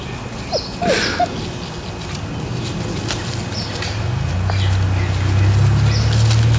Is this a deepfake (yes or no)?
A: no